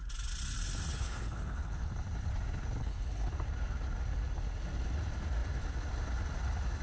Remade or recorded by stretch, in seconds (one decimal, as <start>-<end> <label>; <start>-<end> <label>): 0.0-0.9 recorded; 0.9-1.9 remade; 1.9-2.8 recorded; 2.8-3.3 remade; 3.3-6.8 recorded